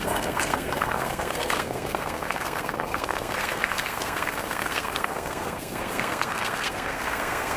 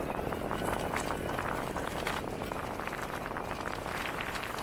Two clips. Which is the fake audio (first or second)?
first